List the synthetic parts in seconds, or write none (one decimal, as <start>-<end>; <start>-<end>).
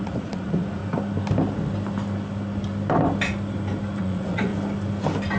0.0-0.8; 4.0-4.5